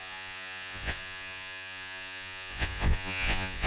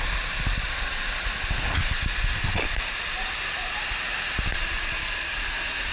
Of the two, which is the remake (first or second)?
first